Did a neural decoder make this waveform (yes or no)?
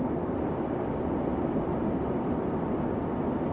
no